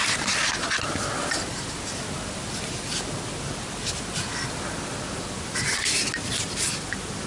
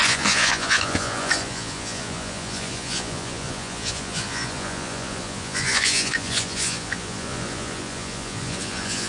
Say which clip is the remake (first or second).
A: second